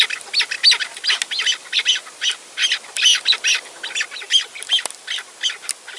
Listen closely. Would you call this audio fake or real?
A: real